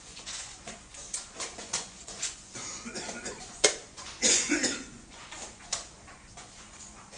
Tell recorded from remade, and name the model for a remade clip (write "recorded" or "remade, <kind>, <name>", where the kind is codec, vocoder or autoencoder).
remade, vocoder, Vocos